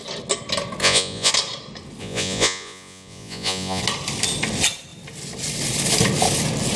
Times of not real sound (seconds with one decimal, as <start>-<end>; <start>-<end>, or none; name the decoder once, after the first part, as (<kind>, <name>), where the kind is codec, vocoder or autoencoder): 0.8-1.3 (vocoder, Vocos); 2.0-3.8